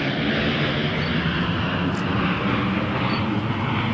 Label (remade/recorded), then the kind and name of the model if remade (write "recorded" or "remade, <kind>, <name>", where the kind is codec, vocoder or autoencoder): recorded